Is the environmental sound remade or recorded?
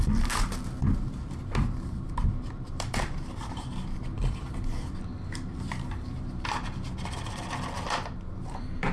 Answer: remade